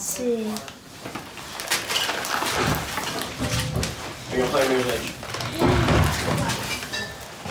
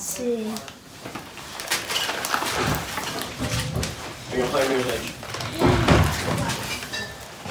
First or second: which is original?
first